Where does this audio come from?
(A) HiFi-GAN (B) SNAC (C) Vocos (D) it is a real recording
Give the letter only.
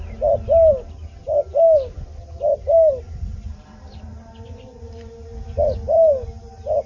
D